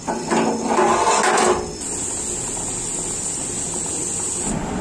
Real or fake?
real